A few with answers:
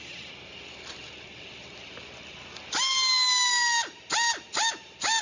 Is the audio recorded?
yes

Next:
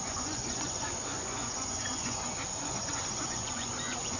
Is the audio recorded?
no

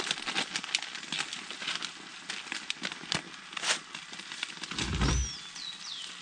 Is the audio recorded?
yes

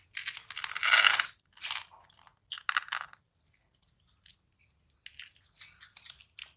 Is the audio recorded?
yes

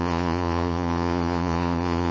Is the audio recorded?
no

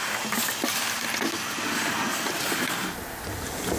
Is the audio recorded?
yes